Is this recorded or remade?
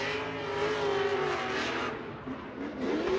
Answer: recorded